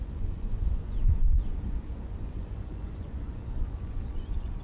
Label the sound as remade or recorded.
remade